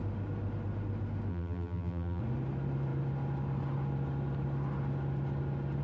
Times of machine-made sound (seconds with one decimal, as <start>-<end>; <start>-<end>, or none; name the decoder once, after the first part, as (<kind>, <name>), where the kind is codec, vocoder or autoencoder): 1.3-2.2 (vocoder, BigVGAN v2)